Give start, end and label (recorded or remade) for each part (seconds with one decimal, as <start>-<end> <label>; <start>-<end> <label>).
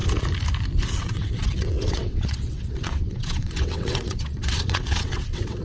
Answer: 0.0-1.0 recorded; 1.0-5.6 remade